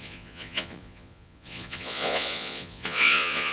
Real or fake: fake